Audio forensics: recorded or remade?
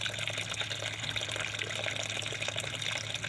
recorded